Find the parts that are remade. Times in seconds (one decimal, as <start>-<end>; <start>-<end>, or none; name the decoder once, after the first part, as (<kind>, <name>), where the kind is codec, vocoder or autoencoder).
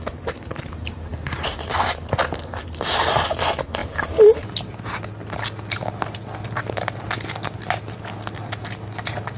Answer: none